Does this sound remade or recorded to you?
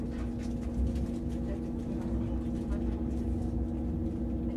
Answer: recorded